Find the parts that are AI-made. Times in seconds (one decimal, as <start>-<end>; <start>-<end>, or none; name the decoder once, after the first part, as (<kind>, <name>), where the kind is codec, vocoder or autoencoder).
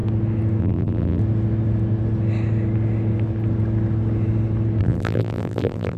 0.6-1.2 (vocoder, BigVGAN v2); 4.8-6.0